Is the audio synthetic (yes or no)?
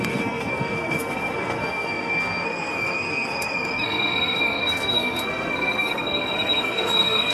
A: yes